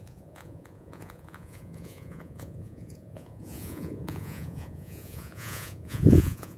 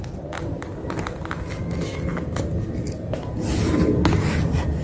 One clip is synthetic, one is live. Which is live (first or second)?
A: second